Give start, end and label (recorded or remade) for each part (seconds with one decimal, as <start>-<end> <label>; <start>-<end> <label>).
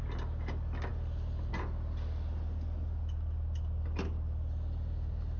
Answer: 0.0-5.4 recorded